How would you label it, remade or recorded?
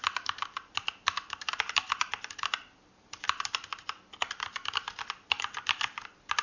recorded